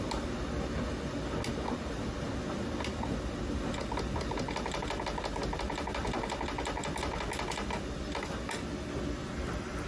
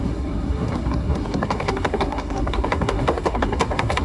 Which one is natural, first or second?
first